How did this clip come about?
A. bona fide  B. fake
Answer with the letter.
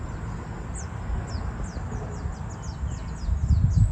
A